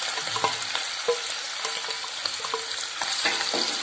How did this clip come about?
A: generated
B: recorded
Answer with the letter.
B